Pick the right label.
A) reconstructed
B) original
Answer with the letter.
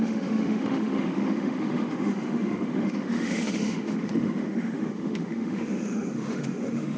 A